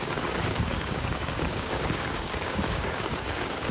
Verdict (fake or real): fake